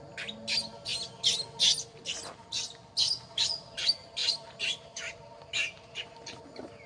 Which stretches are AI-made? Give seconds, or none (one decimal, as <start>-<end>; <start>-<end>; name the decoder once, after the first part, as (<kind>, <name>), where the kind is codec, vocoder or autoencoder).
4.2-6.4 (vocoder, BigVGAN v2)